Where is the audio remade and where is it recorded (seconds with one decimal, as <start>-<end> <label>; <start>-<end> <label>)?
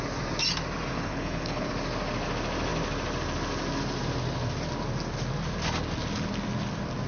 0.0-0.9 recorded; 0.9-1.7 remade; 1.7-7.1 recorded